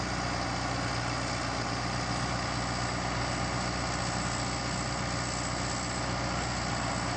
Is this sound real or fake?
real